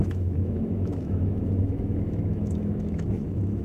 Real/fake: fake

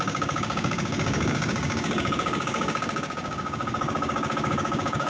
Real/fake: fake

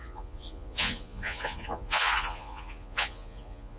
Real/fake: fake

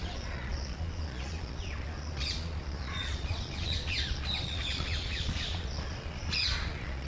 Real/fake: fake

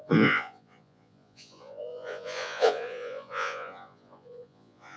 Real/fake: fake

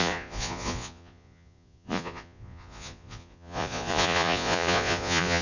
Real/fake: fake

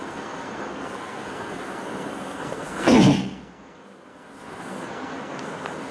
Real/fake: fake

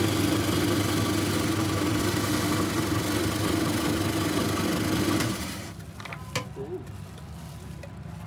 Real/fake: real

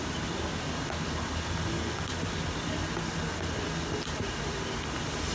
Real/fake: real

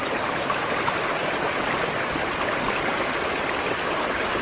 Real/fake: fake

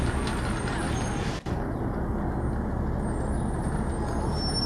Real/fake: real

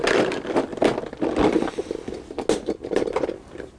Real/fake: real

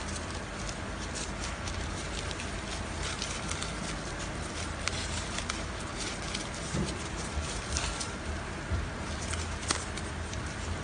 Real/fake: fake